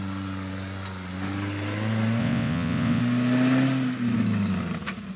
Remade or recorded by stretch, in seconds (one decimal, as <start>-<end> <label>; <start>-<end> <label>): 0.0-2.2 recorded; 2.2-3.0 remade; 3.0-5.2 recorded